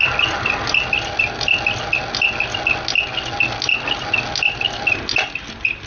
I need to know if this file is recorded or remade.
recorded